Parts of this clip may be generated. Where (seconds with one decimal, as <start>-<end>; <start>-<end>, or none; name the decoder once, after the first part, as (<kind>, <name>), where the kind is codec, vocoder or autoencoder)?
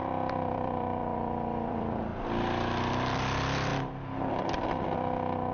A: 0.0-2.1 (vocoder, BigVGAN v2); 2.9-3.7; 4.3-5.5